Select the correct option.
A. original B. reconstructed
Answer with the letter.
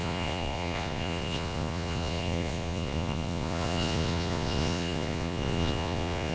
B